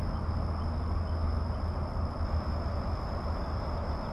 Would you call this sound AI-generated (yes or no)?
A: no